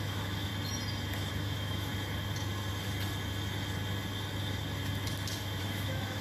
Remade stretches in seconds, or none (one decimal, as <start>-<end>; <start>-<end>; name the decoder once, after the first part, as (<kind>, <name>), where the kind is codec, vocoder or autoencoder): 0.0-0.5 (autoencoder, DAC-VAE); 1.3-1.9; 5.6-6.2

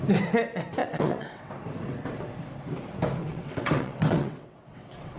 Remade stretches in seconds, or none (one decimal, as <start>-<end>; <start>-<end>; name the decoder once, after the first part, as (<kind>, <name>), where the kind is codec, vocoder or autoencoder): 0.8-1.5 (vocoder, WaveNeXt); 3.2-5.2

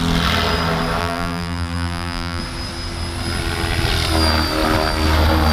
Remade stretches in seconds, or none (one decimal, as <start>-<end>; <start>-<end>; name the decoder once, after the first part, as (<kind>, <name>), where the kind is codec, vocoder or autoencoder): 1.0-2.4 (vocoder, BigVGAN v2)

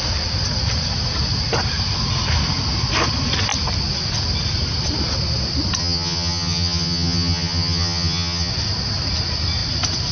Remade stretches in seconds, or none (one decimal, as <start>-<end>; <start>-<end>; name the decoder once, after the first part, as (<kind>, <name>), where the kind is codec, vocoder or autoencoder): 5.8-8.5 (vocoder, HiFi-GAN)